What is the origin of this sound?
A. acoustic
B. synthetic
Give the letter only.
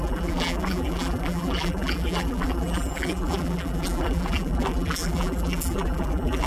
B